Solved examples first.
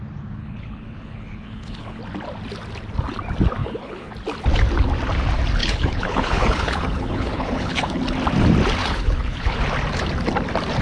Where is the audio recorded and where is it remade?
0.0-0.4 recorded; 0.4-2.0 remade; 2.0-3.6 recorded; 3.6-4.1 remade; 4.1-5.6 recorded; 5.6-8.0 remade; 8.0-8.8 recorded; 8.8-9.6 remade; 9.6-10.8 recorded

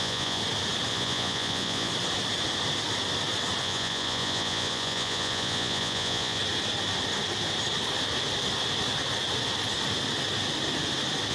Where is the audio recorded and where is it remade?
0.0-0.4 remade; 0.4-0.9 recorded; 0.9-1.9 remade; 1.9-3.6 recorded; 3.6-6.4 remade; 6.4-11.3 recorded

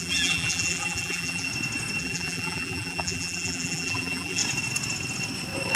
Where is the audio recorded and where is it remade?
0.0-1.5 remade; 1.5-2.0 recorded; 2.0-4.4 remade; 4.4-5.8 recorded

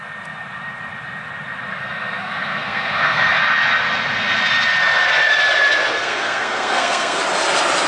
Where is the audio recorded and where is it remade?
0.0-1.7 recorded; 1.7-3.4 remade; 3.4-5.9 recorded; 5.9-7.2 remade; 7.2-7.9 recorded